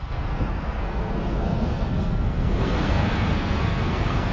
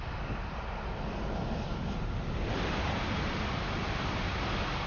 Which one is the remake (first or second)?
first